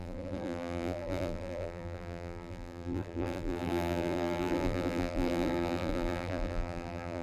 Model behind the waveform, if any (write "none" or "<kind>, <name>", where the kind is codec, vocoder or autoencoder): vocoder, BigVGAN v2